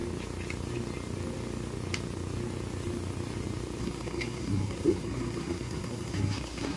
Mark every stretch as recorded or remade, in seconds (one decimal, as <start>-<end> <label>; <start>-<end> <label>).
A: 0.0-3.8 recorded; 3.8-6.8 remade